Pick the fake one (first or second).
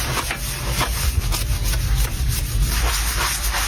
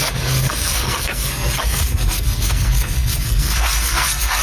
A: second